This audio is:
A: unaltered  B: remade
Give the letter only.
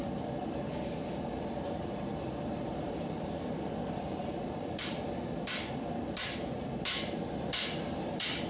B